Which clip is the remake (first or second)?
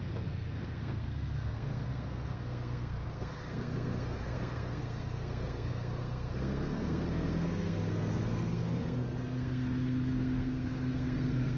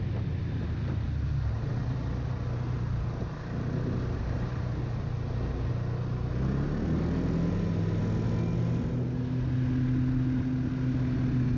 first